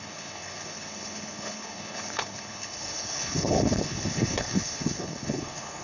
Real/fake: fake